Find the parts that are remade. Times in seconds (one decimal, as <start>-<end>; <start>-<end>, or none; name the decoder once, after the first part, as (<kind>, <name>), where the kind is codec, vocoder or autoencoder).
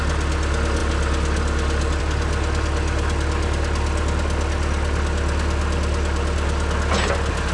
none